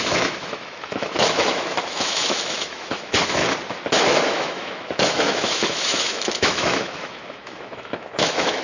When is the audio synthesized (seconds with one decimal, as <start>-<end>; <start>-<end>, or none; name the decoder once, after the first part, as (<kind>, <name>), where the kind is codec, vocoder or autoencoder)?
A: 0.0-3.4 (autoencoder, DAC-VAE); 4.0-8.6